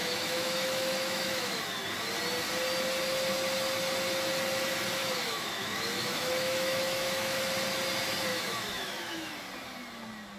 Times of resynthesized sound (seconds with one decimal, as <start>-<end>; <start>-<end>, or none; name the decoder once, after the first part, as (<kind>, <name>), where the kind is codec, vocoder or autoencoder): 0.0-1.6 (autoencoder, DAC-VAE); 5.0-7.4; 8.3-9.3